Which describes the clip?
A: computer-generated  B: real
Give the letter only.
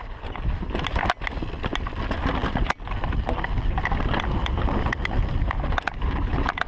B